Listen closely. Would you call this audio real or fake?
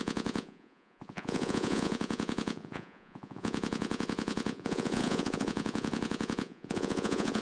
fake